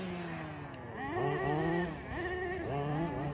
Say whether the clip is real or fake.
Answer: real